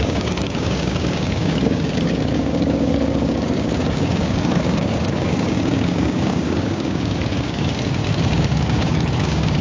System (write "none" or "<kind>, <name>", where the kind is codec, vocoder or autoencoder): codec, DAC